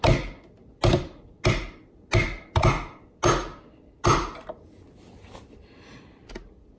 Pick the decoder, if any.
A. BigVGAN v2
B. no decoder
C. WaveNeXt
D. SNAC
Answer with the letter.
B